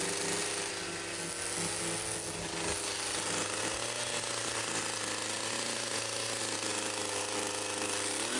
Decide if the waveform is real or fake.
real